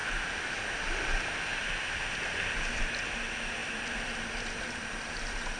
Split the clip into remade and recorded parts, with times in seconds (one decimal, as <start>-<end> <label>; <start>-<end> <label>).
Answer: 0.0-5.6 recorded